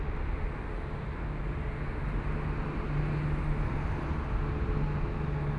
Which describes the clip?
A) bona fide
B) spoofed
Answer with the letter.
A